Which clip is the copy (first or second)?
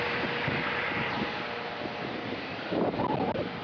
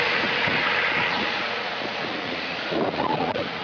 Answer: second